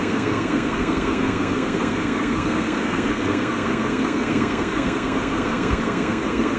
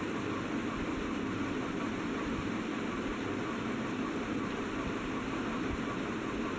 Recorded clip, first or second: second